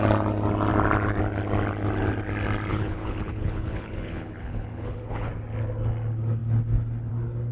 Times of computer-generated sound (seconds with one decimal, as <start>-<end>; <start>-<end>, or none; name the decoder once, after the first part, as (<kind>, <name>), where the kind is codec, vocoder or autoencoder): 2.7-5.3 (codec, HILCodec)